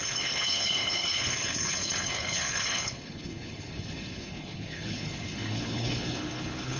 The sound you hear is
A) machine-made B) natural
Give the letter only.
A